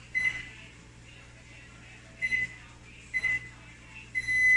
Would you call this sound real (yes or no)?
yes